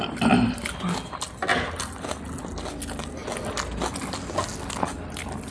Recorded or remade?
recorded